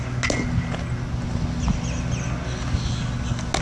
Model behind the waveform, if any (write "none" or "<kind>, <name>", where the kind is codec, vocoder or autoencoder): none